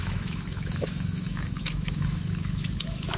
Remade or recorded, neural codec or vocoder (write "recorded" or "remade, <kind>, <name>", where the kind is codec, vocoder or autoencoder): remade, autoencoder, DAC-VAE